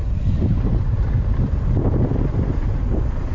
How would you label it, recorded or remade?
recorded